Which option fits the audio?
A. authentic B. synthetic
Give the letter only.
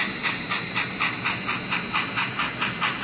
A